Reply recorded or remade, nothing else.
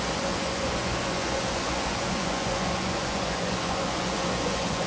remade